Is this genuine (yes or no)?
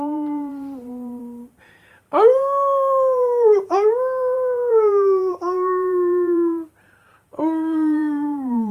no